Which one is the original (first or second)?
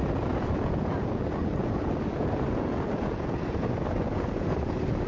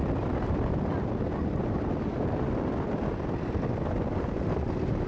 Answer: second